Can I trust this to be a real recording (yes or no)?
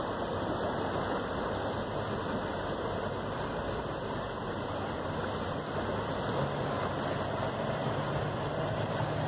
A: yes